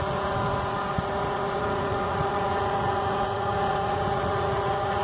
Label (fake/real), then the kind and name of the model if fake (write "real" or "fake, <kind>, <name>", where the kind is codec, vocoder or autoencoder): fake, vocoder, Vocos